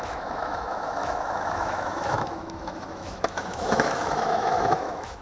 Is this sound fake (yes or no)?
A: yes